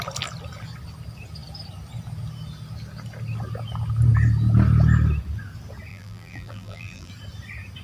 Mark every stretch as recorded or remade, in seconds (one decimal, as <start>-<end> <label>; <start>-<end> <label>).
0.0-5.9 recorded; 5.9-7.1 remade; 7.1-7.8 recorded